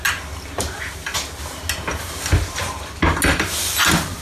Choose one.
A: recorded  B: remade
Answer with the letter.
A